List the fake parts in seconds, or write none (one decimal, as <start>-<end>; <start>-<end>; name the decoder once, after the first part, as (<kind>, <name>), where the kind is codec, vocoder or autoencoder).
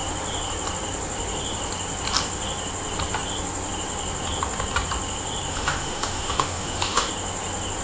5.5-7.1 (autoencoder, DAC-VAE)